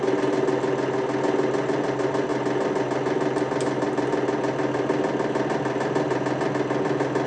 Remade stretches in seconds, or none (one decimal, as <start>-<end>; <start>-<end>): none